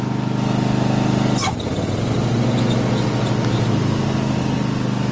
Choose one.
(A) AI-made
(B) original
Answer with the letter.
B